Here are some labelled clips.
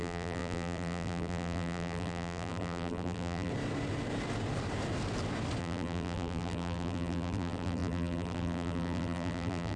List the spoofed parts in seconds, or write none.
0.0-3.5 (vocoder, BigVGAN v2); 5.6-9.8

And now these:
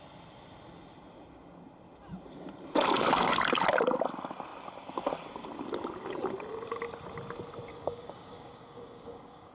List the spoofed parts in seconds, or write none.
7.7-9.5 (codec, DAC)

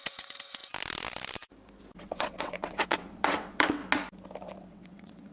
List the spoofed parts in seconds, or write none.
0.0-0.6 (vocoder, WaveNeXt); 2.0-3.8; 4.7-5.3

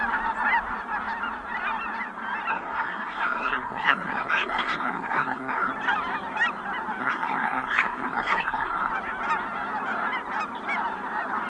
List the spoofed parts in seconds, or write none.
2.5-5.7 (codec, SNAC); 7.0-8.9

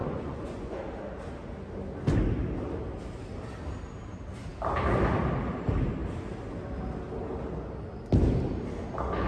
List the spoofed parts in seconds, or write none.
0.0-0.8 (vocoder, Vocos)

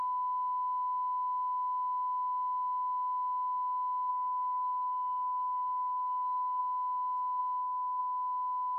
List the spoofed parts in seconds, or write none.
4.1-6.6 (codec, SNAC)

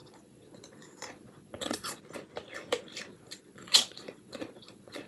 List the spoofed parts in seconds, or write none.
0.0-2.0 (vocoder, Vocos); 3.1-5.1

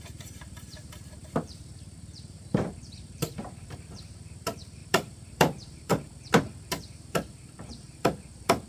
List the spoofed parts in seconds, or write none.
0.0-8.7 (vocoder, BigVGAN v2)